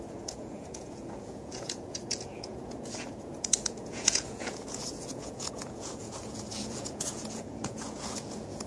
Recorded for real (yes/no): no